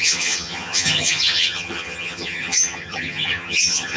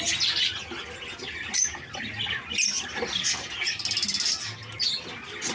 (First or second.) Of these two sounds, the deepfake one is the first